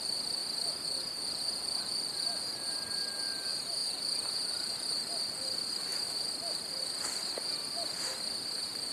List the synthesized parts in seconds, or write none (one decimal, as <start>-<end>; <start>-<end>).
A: 0.0-0.4; 1.8-3.8; 4.5-8.9